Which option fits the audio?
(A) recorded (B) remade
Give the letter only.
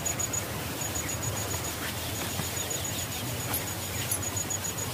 A